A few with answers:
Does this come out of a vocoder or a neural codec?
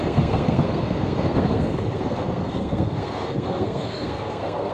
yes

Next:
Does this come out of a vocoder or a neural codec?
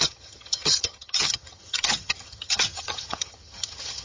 yes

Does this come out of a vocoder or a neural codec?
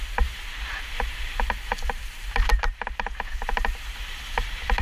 yes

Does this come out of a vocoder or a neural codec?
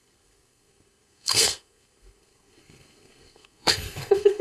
yes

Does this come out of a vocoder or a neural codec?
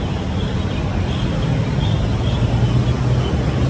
no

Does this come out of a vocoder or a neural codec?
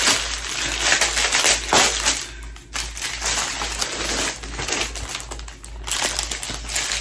no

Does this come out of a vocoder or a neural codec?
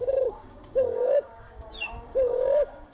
yes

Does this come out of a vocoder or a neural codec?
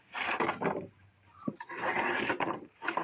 yes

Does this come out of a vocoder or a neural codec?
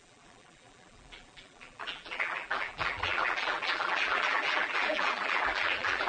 yes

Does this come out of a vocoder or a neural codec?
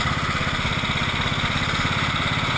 no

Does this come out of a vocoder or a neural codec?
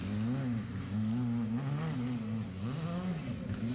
no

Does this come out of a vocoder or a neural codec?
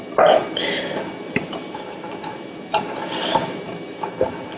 yes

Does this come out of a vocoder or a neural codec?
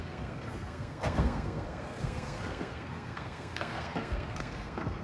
yes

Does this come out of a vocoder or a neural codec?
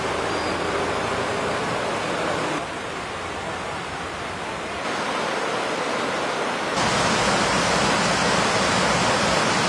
no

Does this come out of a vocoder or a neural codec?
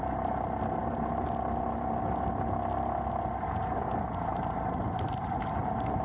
no